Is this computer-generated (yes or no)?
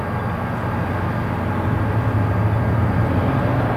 no